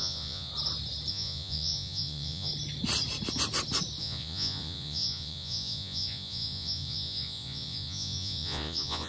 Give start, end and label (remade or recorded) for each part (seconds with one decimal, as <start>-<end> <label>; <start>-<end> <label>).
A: 0.0-0.5 remade; 0.5-1.1 recorded; 1.1-2.5 remade; 2.5-4.0 recorded; 4.0-9.1 remade